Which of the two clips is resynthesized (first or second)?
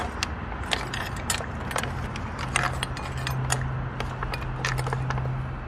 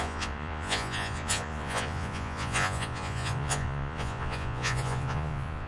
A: second